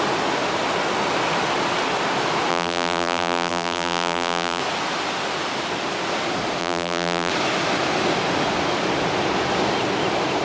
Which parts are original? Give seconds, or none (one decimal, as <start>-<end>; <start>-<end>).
0.0-2.5; 4.6-6.6; 7.3-10.4

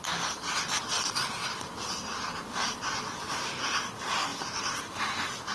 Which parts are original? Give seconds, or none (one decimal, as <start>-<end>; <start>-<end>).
0.0-1.4; 2.5-4.3

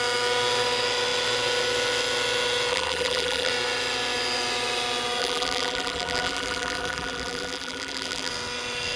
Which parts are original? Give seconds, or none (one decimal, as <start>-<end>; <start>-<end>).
0.0-2.7; 3.5-5.2; 8.3-9.0

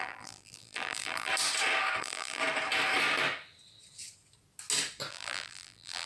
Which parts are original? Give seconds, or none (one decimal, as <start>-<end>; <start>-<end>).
1.3-2.0; 2.4-5.1

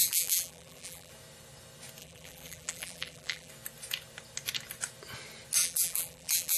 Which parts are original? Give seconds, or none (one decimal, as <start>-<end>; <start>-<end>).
1.1-2.0; 3.5-5.6

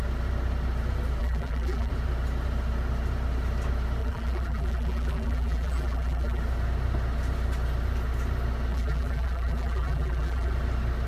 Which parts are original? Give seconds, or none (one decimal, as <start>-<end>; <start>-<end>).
0.0-1.2; 1.9-4.0; 6.4-8.7; 10.5-11.1

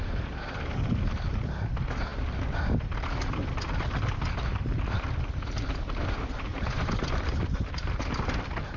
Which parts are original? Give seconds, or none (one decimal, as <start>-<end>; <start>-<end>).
0.0-6.5; 7.4-8.8